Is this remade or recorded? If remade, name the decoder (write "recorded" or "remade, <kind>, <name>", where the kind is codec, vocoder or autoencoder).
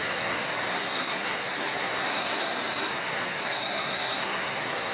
remade, codec, SNAC